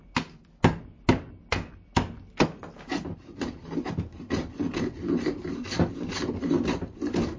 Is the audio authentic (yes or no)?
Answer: yes